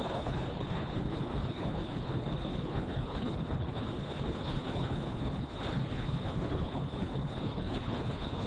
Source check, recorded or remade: remade